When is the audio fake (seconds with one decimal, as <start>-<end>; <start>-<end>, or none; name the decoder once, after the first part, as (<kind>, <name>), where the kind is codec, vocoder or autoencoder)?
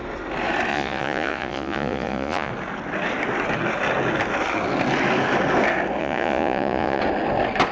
0.7-2.5 (vocoder, Vocos); 6.0-7.0